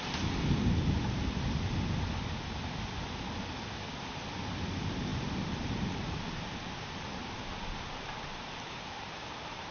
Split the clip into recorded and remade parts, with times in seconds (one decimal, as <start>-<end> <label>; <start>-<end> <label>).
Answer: 0.0-5.1 recorded; 5.1-9.7 remade